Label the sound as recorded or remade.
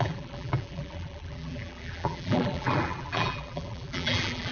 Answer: remade